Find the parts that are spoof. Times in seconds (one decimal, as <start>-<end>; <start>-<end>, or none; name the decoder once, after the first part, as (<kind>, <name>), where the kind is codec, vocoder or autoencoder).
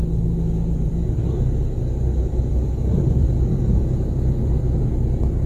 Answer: 1.2-1.8 (vocoder, BigVGAN v2); 2.9-4.6